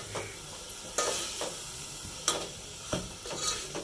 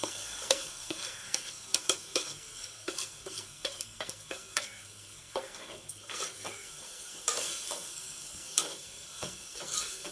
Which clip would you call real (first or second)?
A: first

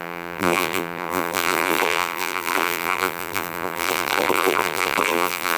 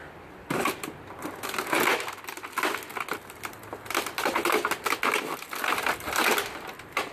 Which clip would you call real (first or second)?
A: second